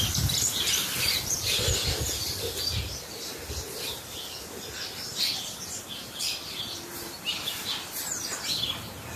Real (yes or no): no